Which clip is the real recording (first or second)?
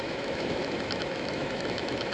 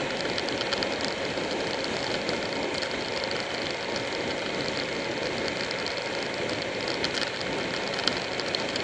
second